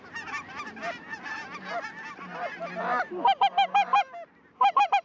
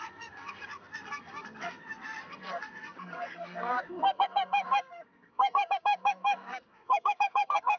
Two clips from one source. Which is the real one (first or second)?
first